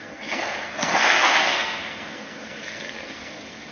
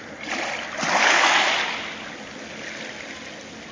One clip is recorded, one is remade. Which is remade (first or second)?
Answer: first